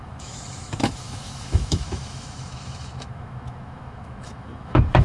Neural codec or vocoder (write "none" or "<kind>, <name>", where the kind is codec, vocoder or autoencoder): autoencoder, DAC-VAE